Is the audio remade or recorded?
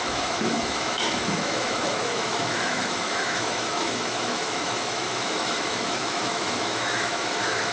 remade